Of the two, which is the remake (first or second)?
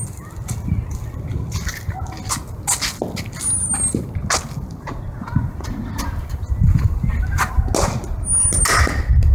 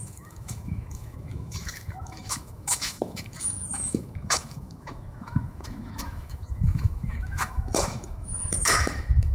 second